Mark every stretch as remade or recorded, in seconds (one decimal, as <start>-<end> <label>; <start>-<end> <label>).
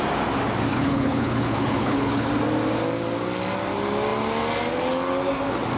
0.0-0.7 recorded; 0.7-2.3 remade; 2.3-5.8 recorded